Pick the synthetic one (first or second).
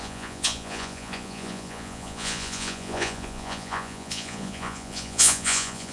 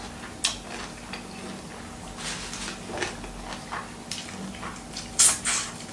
first